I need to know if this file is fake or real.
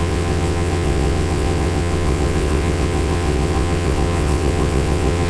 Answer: fake